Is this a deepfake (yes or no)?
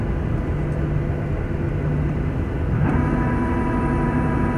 no